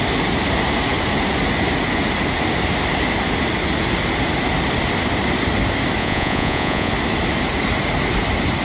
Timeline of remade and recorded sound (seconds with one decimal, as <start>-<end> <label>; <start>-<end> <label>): 0.0-6.0 recorded; 6.0-6.9 remade; 6.9-8.6 recorded